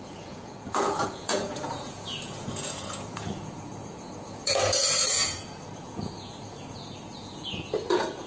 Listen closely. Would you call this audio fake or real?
fake